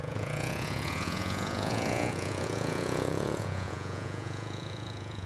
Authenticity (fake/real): fake